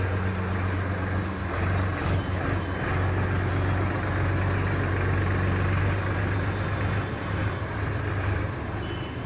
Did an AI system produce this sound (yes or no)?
no